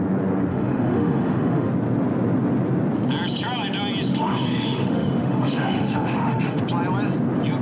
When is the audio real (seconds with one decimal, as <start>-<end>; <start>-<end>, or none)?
0.0-0.5; 1.7-4.1; 6.6-7.6